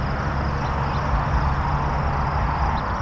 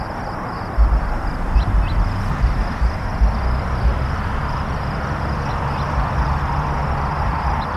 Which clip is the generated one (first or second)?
second